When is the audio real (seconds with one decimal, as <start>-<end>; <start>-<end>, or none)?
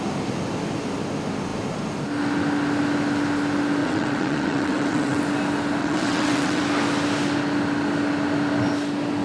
0.0-3.8; 5.2-5.8; 6.6-9.2